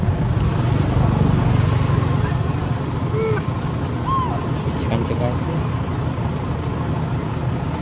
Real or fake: real